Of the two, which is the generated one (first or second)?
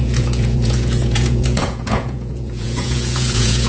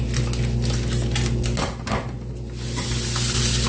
first